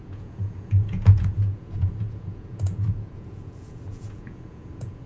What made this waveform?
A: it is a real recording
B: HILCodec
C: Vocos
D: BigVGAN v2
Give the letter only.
C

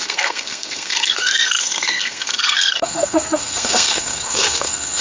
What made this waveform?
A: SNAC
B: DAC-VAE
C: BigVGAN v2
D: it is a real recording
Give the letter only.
A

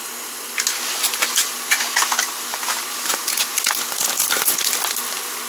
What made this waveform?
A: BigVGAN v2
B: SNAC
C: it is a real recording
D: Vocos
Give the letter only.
C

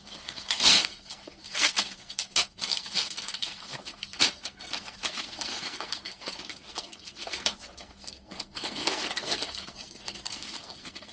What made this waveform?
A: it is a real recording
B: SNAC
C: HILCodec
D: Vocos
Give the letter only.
B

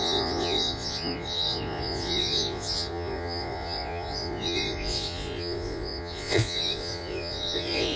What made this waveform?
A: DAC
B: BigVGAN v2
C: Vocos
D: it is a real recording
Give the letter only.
C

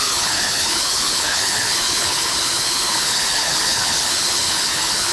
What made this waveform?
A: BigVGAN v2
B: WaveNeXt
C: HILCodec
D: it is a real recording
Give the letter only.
C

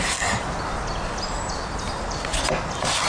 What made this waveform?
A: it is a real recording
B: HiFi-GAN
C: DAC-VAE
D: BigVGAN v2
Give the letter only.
A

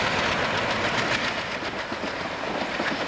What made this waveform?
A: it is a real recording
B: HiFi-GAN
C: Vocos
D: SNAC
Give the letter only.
A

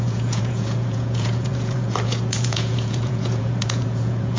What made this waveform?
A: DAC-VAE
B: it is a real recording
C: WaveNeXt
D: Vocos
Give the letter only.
D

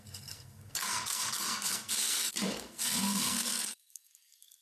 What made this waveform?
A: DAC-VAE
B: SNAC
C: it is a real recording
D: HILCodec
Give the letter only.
B